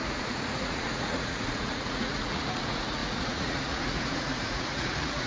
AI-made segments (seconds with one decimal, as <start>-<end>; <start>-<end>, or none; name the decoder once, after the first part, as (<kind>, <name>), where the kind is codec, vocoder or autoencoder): 0.0-5.3 (vocoder, Vocos)